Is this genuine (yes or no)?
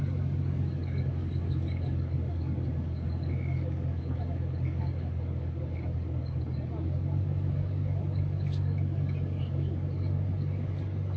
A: no